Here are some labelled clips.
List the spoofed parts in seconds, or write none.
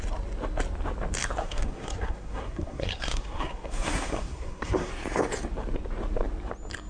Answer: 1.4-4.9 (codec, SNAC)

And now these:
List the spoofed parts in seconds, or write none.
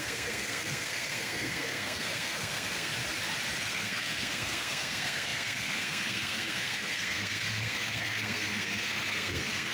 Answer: 0.0-2.9 (codec, SNAC); 3.6-9.7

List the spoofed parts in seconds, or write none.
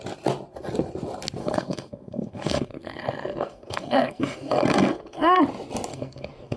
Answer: 1.4-5.4 (codec, SNAC); 5.9-6.6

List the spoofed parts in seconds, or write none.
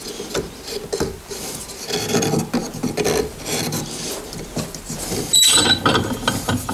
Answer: none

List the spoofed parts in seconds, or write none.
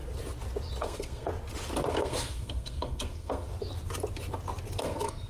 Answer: 0.8-1.3 (codec, SNAC); 1.9-3.5; 4.8-5.3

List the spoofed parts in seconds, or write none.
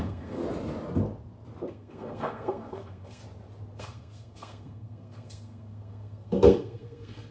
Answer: 0.0-0.4 (codec, SNAC); 1.7-3.2; 3.8-7.3